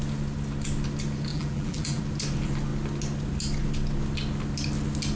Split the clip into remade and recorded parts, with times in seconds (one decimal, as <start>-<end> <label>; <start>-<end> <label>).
0.0-1.3 recorded; 1.3-2.0 remade; 2.0-5.2 recorded